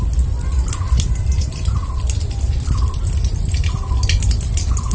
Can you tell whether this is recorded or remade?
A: recorded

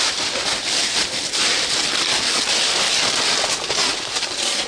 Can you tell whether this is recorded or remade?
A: recorded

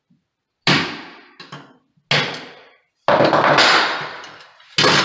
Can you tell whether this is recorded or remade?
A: recorded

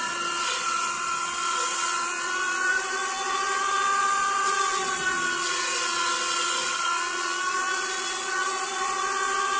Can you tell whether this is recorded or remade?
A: remade